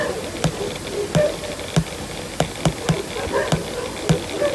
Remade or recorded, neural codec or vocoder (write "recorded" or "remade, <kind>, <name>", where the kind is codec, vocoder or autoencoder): recorded